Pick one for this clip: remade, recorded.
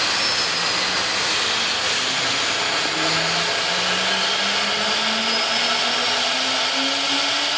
recorded